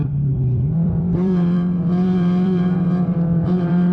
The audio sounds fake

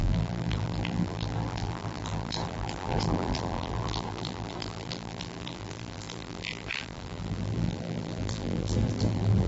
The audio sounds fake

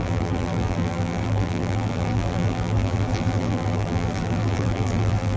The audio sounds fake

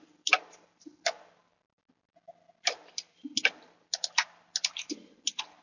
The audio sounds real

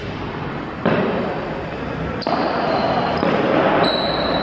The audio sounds real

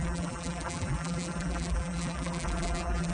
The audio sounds fake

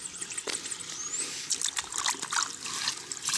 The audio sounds real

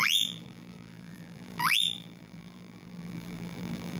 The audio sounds fake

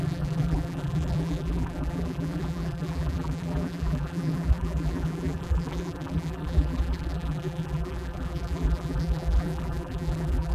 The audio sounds fake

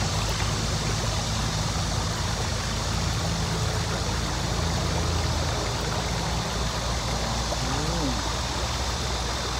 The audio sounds real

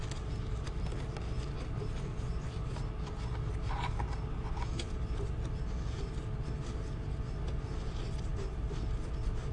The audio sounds real